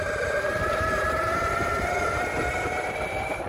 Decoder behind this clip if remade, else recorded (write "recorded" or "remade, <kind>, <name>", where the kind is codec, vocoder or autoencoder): recorded